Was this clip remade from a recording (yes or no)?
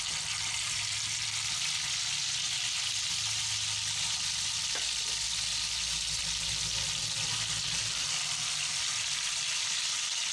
no